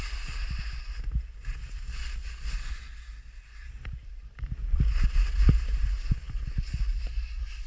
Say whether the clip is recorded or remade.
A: recorded